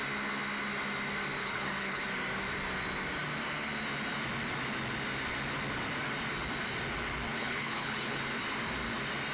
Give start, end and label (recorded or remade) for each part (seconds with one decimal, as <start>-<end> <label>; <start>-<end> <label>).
0.0-1.4 recorded; 1.4-2.0 remade; 2.0-7.3 recorded; 7.3-8.2 remade; 8.2-9.3 recorded